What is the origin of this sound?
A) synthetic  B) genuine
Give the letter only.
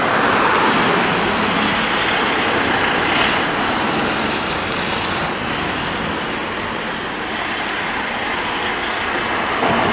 B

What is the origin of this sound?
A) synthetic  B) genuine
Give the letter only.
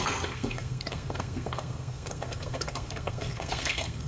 A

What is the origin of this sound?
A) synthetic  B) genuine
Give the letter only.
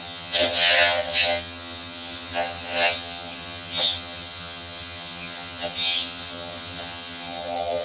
A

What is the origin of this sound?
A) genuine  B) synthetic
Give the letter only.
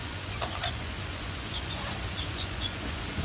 B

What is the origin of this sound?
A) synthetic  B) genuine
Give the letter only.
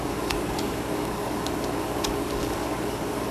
A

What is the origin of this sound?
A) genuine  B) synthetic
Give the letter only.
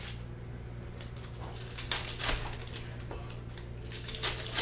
A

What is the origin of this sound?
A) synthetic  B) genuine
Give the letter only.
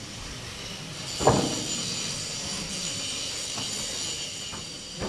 B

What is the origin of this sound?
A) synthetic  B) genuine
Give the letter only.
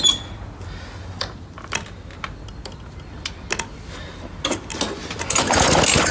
B